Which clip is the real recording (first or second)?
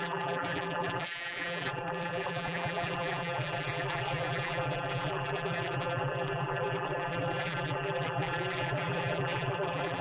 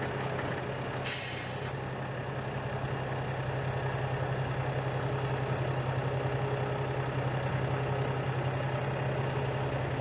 second